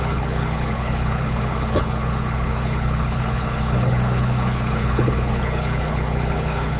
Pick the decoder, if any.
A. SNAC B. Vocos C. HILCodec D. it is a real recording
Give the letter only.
C